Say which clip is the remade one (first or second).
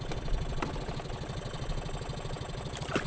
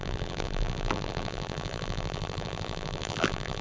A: second